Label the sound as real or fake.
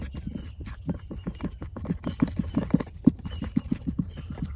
real